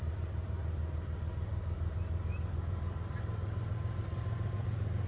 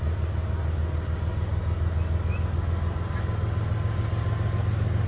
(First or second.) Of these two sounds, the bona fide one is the second